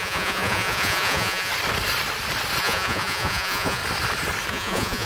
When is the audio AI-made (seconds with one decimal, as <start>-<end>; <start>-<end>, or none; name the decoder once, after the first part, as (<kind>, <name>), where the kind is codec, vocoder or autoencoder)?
0.0-1.5 (vocoder, Vocos); 2.6-3.8; 4.5-5.1